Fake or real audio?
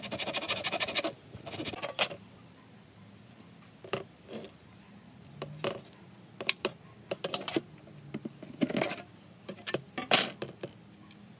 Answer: real